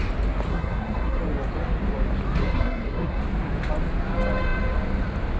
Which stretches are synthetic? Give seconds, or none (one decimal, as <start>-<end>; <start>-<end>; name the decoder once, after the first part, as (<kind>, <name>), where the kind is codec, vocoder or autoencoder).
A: 0.5-1.2 (codec, SNAC); 2.4-3.2